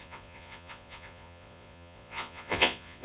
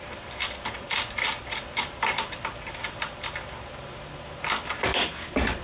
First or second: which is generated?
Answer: first